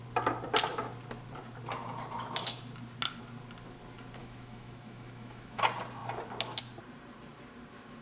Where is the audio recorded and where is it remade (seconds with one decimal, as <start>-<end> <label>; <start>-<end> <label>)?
0.0-4.2 recorded; 4.2-5.6 remade; 5.6-8.0 recorded